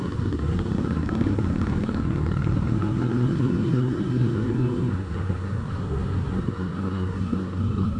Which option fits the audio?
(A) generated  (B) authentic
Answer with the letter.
A